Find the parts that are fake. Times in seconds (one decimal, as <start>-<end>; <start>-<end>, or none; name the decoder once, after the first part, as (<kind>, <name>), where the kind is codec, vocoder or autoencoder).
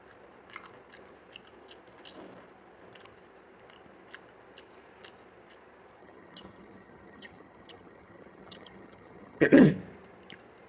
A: 6.0-9.7 (vocoder, HiFi-GAN)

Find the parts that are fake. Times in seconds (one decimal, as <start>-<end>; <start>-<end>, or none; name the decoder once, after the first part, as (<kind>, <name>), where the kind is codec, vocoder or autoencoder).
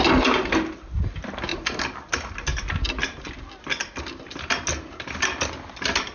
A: none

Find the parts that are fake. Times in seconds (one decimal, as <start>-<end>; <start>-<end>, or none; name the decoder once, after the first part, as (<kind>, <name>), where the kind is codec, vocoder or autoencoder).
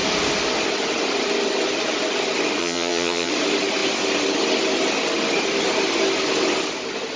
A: 2.6-3.3 (vocoder, HiFi-GAN)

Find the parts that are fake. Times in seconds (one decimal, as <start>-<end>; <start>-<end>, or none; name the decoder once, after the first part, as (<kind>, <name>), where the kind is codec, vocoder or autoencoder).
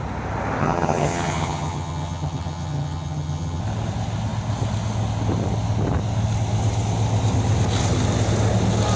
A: 0.6-3.6 (vocoder, HiFi-GAN)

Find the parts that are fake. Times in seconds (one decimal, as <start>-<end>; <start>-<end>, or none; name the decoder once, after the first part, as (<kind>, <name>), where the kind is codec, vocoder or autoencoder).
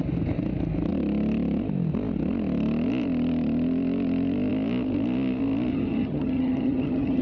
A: 5.7-7.2 (vocoder, HiFi-GAN)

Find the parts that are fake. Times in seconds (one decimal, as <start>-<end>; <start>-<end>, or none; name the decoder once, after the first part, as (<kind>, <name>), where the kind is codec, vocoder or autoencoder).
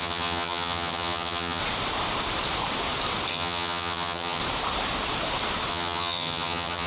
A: 0.0-1.6 (vocoder, HiFi-GAN); 3.3-4.4; 5.7-6.9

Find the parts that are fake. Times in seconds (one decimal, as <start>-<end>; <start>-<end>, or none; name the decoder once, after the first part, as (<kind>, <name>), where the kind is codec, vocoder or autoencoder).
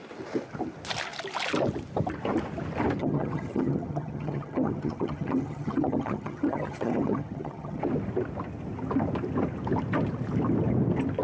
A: 3.0-7.8 (vocoder, HiFi-GAN)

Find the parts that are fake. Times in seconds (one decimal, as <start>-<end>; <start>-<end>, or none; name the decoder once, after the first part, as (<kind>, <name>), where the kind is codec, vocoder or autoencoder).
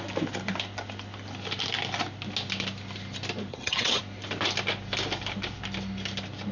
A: 3.5-4.0 (vocoder, HiFi-GAN)